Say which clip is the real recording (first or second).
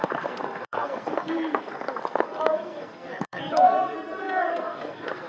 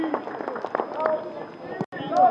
second